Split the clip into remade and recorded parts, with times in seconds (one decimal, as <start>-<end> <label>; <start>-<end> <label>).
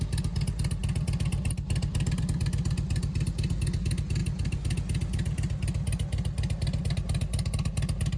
0.0-8.2 recorded